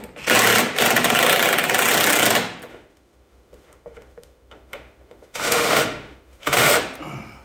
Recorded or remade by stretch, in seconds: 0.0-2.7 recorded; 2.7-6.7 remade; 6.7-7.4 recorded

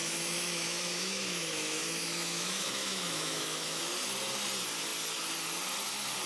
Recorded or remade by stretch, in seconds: 0.0-3.8 remade; 3.8-6.3 recorded